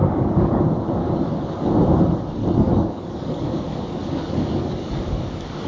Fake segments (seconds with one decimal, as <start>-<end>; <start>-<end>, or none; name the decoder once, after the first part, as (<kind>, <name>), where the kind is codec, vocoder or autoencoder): 0.0-0.6 (codec, DAC); 1.0-1.7; 2.4-5.7